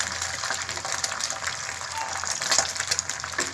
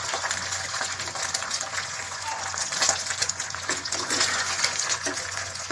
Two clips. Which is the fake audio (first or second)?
second